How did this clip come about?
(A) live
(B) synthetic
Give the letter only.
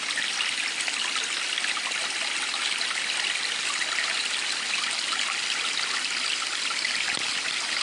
A